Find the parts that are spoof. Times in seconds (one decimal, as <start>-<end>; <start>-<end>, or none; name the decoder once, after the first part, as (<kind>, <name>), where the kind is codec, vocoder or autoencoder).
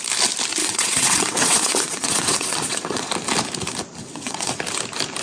0.6-3.1 (vocoder, WaveNeXt); 4.0-4.6